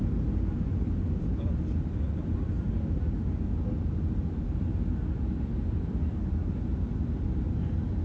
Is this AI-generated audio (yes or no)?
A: no